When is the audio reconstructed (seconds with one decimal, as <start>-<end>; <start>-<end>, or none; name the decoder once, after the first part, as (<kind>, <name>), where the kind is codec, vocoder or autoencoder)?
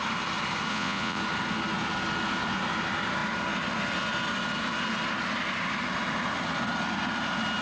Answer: 0.7-1.2 (vocoder, Vocos)